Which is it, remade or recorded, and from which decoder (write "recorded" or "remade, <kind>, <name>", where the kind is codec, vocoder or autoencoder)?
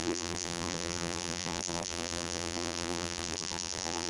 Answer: remade, vocoder, BigVGAN v2